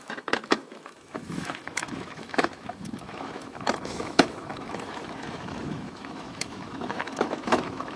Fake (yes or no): yes